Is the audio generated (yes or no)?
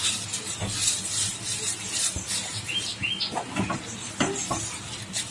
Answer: no